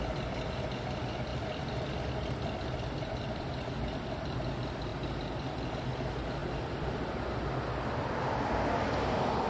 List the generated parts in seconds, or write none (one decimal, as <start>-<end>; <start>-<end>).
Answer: 1.3-3.7; 6.4-8.1

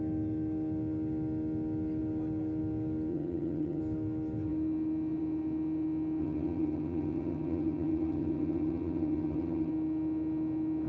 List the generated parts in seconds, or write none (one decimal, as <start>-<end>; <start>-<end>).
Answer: 3.1-3.8; 6.2-9.7

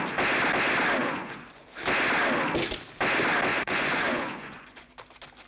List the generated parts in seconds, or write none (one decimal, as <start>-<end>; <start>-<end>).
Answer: 1.0-1.6; 3.5-4.9

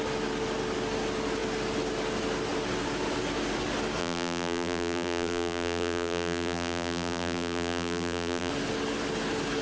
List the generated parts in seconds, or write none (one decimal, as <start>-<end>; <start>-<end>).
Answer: 4.0-8.5

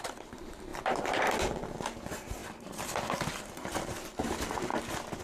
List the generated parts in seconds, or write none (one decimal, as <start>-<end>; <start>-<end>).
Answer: 0.0-2.4; 3.4-4.7

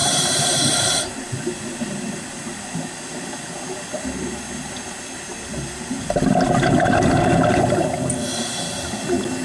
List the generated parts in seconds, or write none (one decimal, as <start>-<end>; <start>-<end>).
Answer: 0.0-1.3

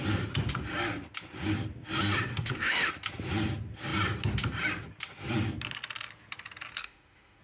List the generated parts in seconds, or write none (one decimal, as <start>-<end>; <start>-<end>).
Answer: 2.3-2.9; 6.8-7.4

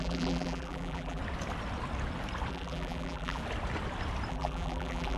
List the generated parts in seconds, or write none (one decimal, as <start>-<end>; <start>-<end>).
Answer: 0.0-1.2; 2.5-3.4; 4.3-5.2